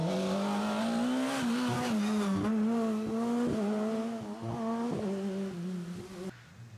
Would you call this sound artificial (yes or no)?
no